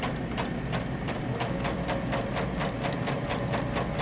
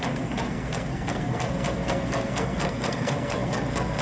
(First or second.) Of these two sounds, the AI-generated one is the second